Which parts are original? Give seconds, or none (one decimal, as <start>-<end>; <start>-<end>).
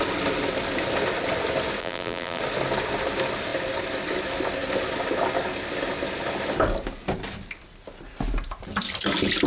0.0-1.8; 2.4-9.5